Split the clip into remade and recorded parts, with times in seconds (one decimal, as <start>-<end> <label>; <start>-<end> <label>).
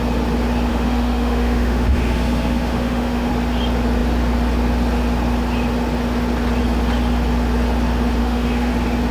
0.0-0.7 recorded; 0.7-3.3 remade; 3.3-8.2 recorded; 8.2-8.7 remade; 8.7-9.1 recorded